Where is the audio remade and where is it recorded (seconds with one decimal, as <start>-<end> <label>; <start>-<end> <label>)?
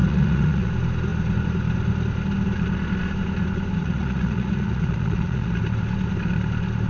0.0-0.7 remade; 0.7-3.8 recorded; 3.8-5.6 remade; 5.6-6.9 recorded